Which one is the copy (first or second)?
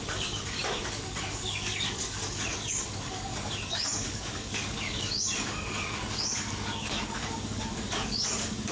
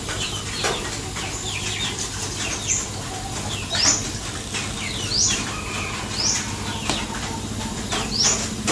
first